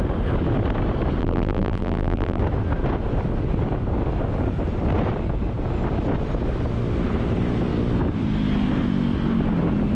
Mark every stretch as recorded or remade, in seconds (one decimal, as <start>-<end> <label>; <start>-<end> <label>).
0.0-1.2 recorded; 1.2-2.4 remade; 2.4-9.9 recorded